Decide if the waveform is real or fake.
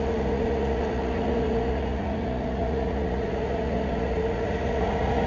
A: fake